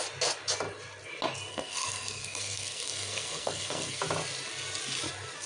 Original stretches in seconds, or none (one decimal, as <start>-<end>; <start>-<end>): 0.0-1.5; 4.0-5.5